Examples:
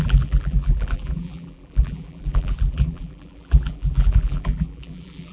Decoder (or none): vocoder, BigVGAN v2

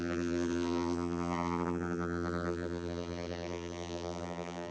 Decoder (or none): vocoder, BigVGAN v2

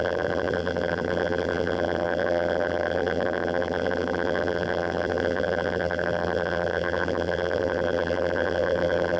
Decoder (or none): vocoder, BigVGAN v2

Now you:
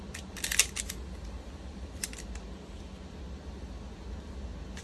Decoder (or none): none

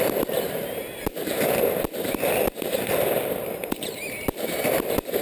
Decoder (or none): vocoder, BigVGAN v2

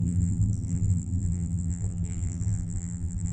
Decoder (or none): vocoder, BigVGAN v2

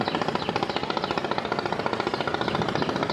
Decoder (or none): none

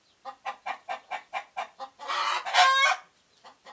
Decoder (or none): none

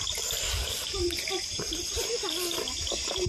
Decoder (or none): none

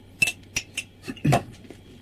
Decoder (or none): none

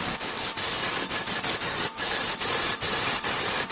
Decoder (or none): none